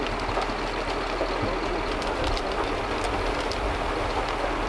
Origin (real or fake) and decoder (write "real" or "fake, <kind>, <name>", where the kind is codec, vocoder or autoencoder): real